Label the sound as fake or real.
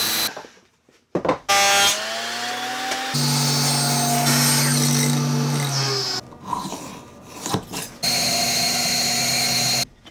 real